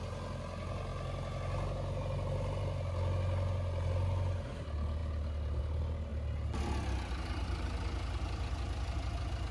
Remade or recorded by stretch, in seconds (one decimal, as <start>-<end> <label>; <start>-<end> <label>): 0.0-9.5 recorded